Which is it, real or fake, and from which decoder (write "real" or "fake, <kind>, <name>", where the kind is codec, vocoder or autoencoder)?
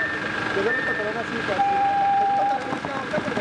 fake, vocoder, BigVGAN v2